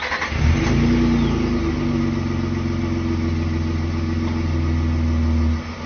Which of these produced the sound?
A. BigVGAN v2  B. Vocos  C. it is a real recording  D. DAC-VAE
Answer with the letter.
C